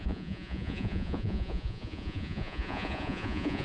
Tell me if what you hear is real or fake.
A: fake